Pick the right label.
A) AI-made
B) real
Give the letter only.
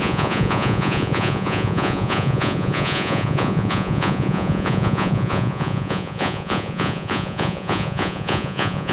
A